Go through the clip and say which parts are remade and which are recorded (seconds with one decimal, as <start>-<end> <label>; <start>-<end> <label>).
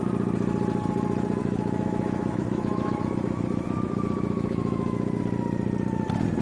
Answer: 0.0-1.4 recorded; 1.4-5.2 remade; 5.2-6.4 recorded